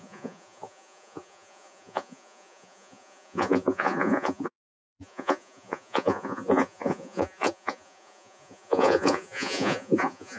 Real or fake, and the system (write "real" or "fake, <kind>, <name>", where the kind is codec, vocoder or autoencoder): fake, vocoder, Vocos